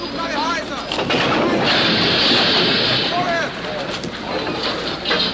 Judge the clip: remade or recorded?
recorded